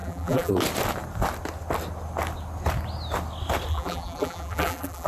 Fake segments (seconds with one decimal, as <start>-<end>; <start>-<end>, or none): 0.0-0.5; 3.7-5.1